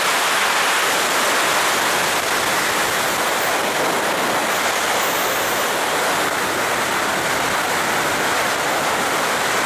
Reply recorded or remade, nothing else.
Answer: recorded